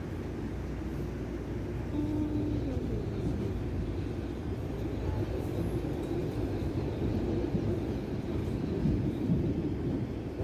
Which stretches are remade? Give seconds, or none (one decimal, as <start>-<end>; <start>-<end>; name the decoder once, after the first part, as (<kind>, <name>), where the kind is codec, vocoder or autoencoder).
6.2-10.4 (vocoder, BigVGAN v2)